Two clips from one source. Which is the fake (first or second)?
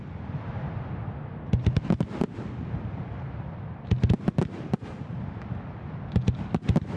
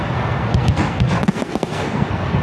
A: second